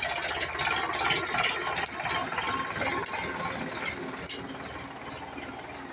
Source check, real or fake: real